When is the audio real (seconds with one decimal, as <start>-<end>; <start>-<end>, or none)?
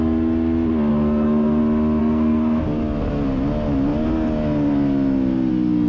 0.0-0.9; 1.6-2.0; 2.6-5.9